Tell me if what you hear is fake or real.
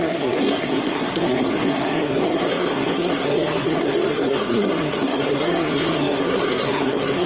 fake